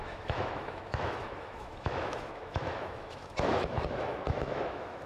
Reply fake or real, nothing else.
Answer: fake